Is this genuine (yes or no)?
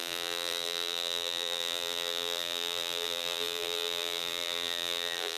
no